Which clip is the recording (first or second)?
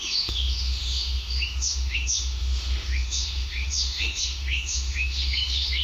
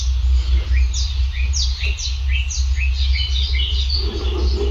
second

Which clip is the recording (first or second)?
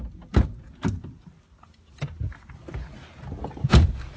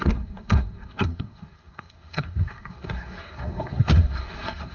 first